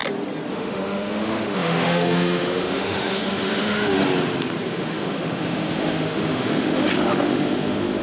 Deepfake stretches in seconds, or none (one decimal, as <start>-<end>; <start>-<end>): 0.5-4.0; 4.7-8.0